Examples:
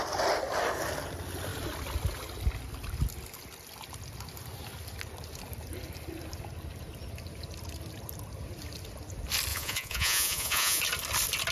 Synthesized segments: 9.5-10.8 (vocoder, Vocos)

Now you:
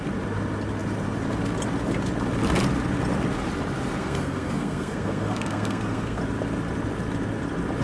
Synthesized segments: 4.0-6.2 (codec, SNAC)

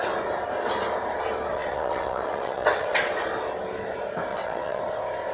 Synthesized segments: 1.5-3.1 (vocoder, WaveNeXt); 4.3-4.8